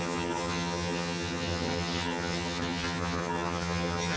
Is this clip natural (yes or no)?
no